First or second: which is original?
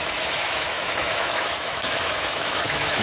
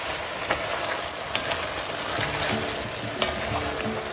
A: second